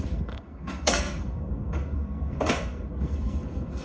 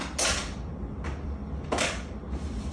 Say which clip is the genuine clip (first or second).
second